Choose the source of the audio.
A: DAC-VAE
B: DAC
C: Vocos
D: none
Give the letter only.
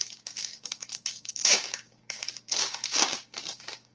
B